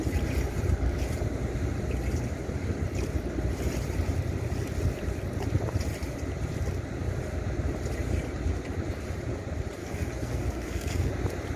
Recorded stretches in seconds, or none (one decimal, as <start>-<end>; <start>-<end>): 0.0-9.8; 11.1-11.6